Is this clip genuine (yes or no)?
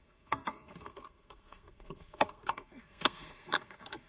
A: no